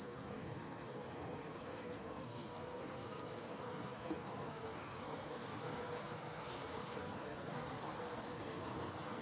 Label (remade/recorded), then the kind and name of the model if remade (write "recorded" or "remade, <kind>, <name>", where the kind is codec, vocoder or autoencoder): remade, codec, SNAC